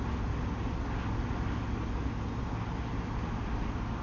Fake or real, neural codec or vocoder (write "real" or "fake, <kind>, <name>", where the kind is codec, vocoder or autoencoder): real